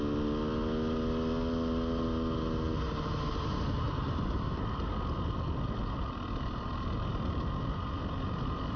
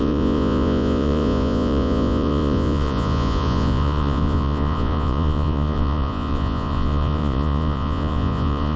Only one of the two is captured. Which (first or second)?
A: first